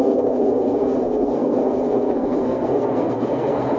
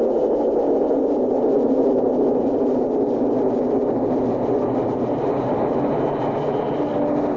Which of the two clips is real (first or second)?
second